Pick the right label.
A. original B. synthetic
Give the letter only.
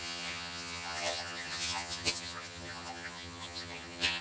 B